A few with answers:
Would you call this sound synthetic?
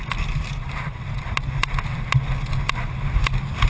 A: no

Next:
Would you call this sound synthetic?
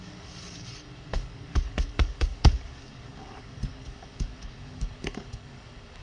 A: yes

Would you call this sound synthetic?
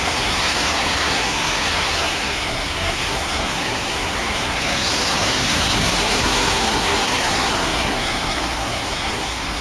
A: yes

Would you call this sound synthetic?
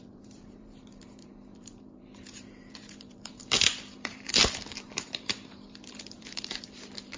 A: yes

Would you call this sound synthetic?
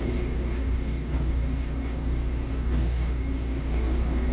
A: yes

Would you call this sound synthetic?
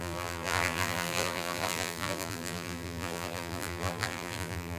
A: yes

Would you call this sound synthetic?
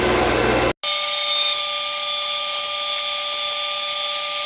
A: no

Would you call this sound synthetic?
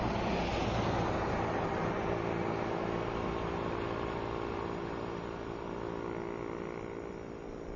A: no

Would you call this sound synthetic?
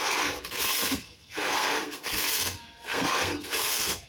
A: yes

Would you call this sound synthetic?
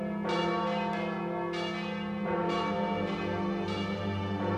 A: no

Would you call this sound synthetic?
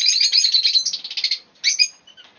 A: no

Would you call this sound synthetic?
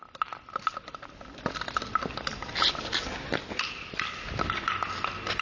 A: no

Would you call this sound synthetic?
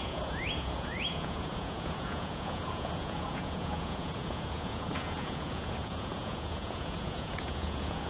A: yes